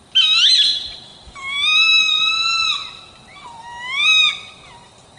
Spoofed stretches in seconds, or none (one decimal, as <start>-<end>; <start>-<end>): none